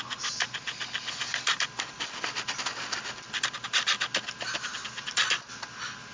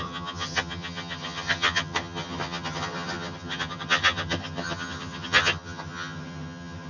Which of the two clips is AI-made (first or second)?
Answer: second